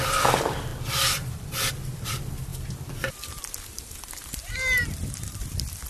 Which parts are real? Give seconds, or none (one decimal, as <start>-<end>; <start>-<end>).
4.4-5.2